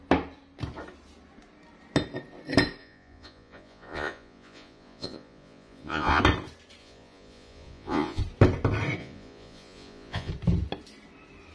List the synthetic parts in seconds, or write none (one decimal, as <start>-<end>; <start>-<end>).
2.8-6.2; 6.8-8.2; 9.0-10.3